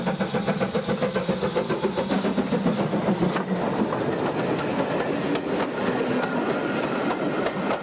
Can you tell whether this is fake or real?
real